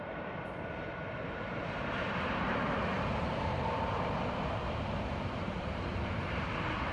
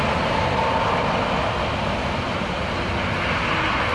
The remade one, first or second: first